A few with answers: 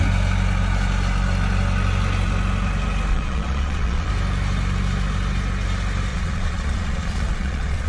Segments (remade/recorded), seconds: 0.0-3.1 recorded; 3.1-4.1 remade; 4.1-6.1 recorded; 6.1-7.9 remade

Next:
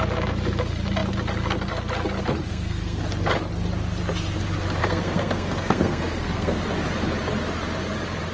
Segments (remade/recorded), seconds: 0.0-2.5 recorded; 2.5-3.0 remade; 3.0-4.8 recorded; 4.8-6.6 remade; 6.6-8.3 recorded

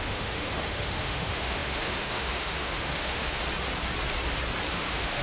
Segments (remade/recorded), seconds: 0.0-3.4 remade; 3.4-4.7 recorded; 4.7-5.2 remade

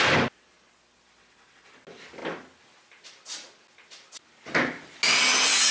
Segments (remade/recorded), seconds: 0.0-5.7 recorded